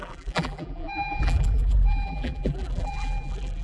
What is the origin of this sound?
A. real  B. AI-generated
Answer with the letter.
B